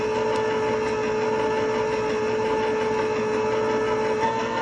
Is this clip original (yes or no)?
yes